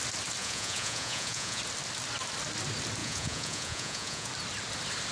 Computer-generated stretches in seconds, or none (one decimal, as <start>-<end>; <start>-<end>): 0.4-1.6; 3.0-4.3